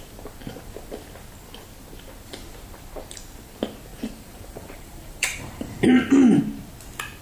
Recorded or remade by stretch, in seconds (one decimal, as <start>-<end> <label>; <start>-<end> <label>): 0.0-3.9 recorded; 3.9-6.4 remade; 6.4-7.2 recorded